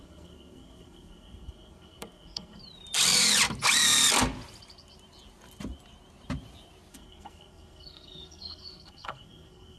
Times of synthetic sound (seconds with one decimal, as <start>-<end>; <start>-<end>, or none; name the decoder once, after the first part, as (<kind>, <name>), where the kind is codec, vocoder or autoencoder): 0.0-2.6 (codec, SNAC); 6.9-9.8